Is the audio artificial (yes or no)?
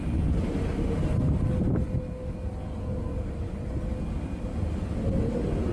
no